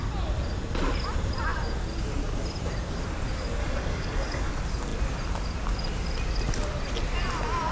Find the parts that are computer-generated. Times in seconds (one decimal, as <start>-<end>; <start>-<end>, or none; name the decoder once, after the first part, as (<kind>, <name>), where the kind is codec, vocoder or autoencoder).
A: 3.6-4.5 (codec, DAC)